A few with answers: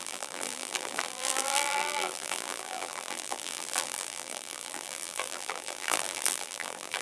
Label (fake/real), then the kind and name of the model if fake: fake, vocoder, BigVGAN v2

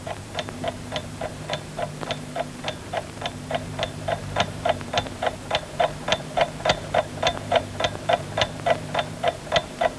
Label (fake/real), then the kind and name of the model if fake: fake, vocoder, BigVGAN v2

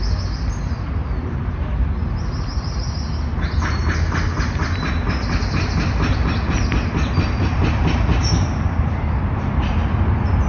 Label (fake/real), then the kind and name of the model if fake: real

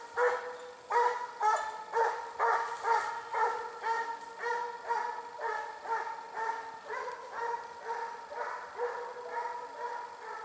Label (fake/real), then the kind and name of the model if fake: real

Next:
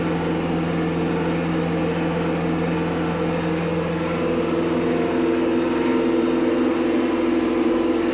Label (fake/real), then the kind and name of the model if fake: real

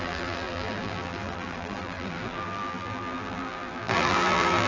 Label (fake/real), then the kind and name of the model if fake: fake, vocoder, BigVGAN v2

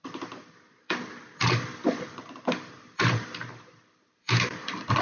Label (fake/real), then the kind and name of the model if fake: fake, vocoder, BigVGAN v2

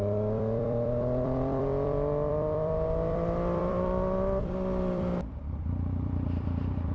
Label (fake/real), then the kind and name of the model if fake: fake, vocoder, BigVGAN v2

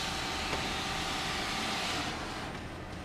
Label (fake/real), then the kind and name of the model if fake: real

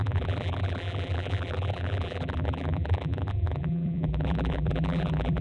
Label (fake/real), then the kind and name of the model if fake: fake, vocoder, BigVGAN v2